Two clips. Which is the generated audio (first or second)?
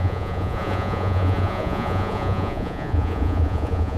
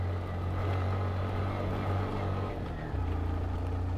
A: first